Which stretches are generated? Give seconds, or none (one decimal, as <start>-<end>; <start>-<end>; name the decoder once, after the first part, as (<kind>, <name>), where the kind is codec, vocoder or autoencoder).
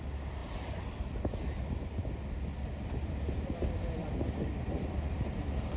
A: 0.0-0.4 (vocoder, BigVGAN v2); 3.1-5.8